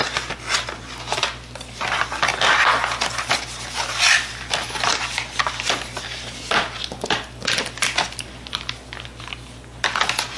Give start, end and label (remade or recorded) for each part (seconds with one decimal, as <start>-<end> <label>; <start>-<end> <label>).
0.0-2.7 recorded; 2.7-3.3 remade; 3.3-10.4 recorded